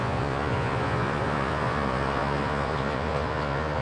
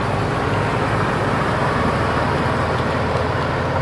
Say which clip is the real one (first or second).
second